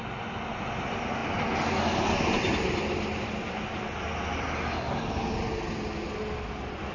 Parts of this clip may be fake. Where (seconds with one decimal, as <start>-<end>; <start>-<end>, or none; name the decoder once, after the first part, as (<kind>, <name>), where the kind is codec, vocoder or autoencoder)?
none

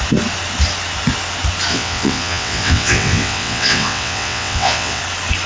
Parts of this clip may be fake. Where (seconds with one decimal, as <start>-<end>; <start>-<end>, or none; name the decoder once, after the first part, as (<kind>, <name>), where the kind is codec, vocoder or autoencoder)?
1.7-5.0 (vocoder, WaveNeXt)

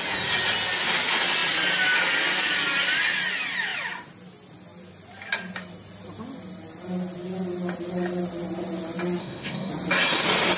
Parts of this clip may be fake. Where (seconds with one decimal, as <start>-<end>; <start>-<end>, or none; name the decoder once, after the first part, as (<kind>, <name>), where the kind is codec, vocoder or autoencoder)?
9.2-9.7 (codec, SNAC)

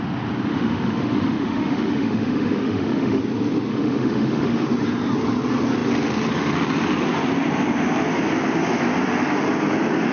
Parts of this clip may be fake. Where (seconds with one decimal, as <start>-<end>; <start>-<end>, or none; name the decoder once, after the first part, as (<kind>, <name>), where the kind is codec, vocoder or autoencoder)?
0.5-3.2 (autoencoder, DAC-VAE); 3.7-4.7

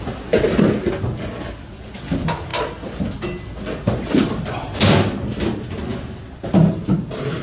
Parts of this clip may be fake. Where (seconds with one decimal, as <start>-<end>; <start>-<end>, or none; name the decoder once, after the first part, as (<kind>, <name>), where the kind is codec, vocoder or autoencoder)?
none